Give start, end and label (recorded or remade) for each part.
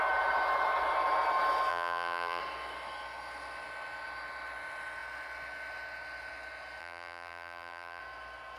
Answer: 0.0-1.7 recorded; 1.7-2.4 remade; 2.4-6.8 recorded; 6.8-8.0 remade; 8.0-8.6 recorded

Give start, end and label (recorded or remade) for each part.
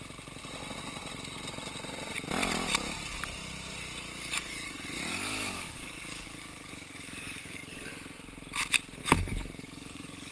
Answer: 0.0-4.1 recorded; 4.1-7.9 remade; 7.9-9.0 recorded; 9.0-10.3 remade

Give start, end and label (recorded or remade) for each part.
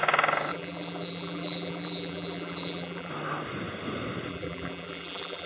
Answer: 0.0-0.5 recorded; 0.5-3.1 remade; 3.1-4.3 recorded; 4.3-5.5 remade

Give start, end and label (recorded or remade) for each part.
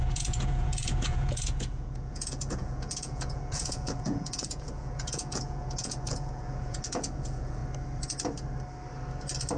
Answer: 0.0-7.6 remade; 7.6-9.6 recorded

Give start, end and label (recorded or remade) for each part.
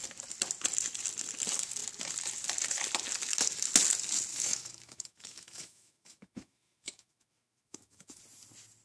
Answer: 0.0-4.3 recorded; 4.3-8.2 remade; 8.2-8.8 recorded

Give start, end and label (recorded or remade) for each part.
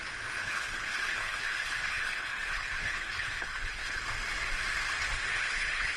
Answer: 0.0-0.4 recorded; 0.4-4.0 remade; 4.0-5.3 recorded; 5.3-6.0 remade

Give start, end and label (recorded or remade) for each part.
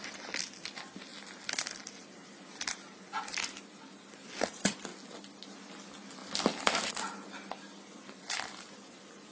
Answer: 0.0-9.3 recorded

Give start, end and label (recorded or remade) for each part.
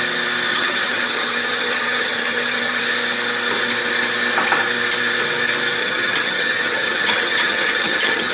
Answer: 0.0-0.5 recorded; 0.5-2.8 remade; 2.8-5.8 recorded; 5.8-8.3 remade